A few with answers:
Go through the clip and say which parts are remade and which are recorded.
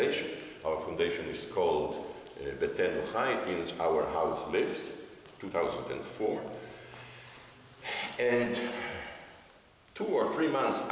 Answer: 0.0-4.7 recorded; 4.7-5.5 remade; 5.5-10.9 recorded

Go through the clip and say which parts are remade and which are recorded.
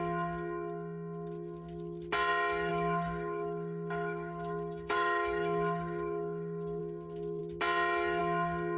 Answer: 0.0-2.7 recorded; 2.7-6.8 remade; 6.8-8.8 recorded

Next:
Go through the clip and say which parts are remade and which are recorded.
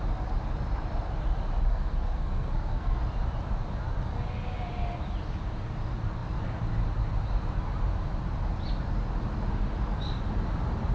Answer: 0.0-1.7 recorded; 1.7-3.0 remade; 3.0-10.9 recorded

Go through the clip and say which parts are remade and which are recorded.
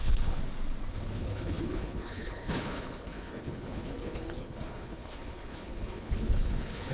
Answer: 0.0-0.4 remade; 0.4-0.9 recorded; 0.9-6.9 remade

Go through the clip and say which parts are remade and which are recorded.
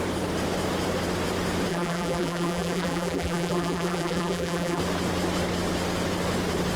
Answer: 0.0-1.7 recorded; 1.7-4.8 remade; 4.8-6.8 recorded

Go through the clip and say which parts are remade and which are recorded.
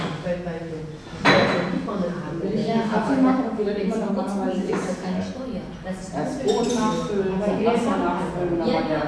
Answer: 0.0-2.6 recorded; 2.6-4.1 remade; 4.1-4.6 recorded; 4.6-5.2 remade; 5.2-9.1 recorded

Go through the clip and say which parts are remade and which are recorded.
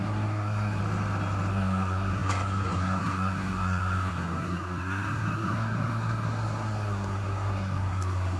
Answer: 0.0-0.8 remade; 0.8-1.5 recorded; 1.5-8.4 remade